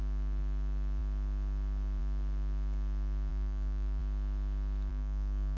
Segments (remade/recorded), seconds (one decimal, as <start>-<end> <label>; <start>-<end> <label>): 0.0-3.3 recorded; 3.3-4.0 remade; 4.0-4.9 recorded; 4.9-5.6 remade